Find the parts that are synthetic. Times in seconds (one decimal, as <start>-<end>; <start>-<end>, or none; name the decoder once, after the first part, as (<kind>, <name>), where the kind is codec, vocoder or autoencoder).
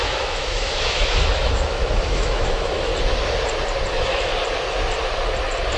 0.0-2.9 (autoencoder, DAC-VAE); 3.9-4.3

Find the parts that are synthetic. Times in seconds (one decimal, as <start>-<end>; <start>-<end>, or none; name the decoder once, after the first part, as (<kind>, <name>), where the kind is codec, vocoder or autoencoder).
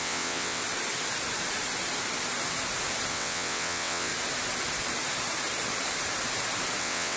0.0-0.6 (vocoder, WaveNeXt); 3.1-4.1; 6.8-7.2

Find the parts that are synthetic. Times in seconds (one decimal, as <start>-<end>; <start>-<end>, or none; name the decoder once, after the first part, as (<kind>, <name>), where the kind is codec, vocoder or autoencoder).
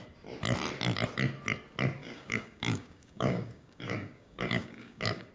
2.0-5.3 (codec, DAC)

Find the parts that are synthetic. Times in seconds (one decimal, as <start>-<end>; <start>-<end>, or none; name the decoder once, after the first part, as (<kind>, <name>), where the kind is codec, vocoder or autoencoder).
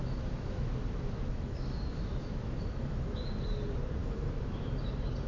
0.0-3.2 (autoencoder, DAC-VAE); 4.0-4.7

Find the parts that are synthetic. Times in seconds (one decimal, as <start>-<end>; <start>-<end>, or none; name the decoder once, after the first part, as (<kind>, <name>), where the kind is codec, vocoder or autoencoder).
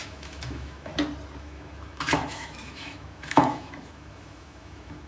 0.0-0.9 (autoencoder, DAC-VAE); 1.4-5.1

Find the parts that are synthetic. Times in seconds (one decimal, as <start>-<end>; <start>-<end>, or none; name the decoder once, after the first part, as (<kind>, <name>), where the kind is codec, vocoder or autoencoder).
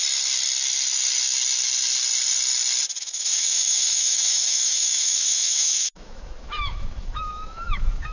3.0-8.1 (autoencoder, DAC-VAE)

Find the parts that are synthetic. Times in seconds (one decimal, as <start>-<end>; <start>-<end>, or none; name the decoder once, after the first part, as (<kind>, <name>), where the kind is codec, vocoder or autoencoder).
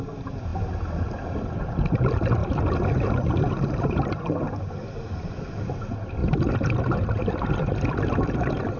2.4-4.6 (vocoder, BigVGAN v2); 6.2-8.8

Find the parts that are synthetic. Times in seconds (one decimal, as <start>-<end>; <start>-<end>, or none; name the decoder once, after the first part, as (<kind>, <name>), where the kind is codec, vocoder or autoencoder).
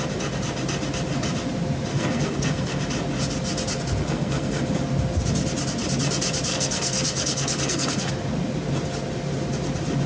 1.9-2.8 (codec, SNAC); 4.0-4.6; 6.5-8.1